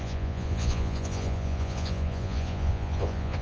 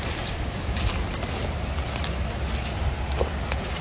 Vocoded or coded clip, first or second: first